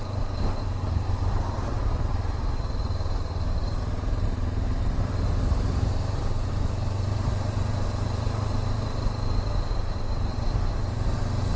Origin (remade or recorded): remade